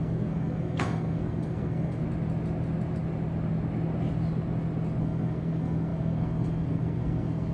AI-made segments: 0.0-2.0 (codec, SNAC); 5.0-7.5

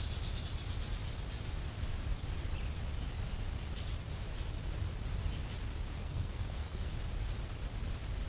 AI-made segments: 6.0-6.9 (codec, SNAC)

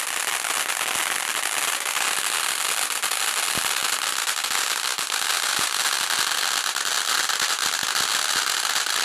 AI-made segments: none

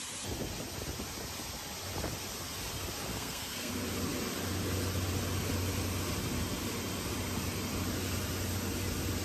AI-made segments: 3.1-3.7 (codec, SNAC)